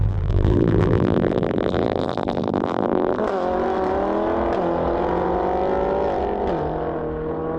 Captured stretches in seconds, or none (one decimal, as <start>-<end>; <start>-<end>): 3.2-7.6